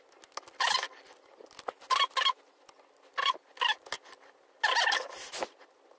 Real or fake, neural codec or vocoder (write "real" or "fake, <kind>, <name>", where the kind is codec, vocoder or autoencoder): real